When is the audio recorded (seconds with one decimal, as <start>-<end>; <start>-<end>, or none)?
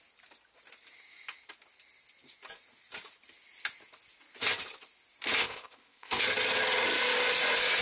0.0-5.4; 6.2-7.8